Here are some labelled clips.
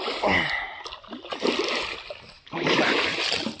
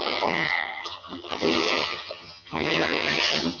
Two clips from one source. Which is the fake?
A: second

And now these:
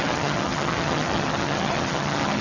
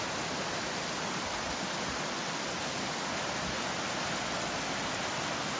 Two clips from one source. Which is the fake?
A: first